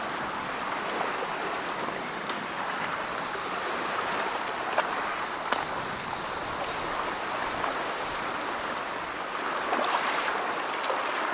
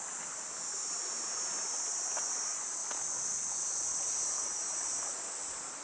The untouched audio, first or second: second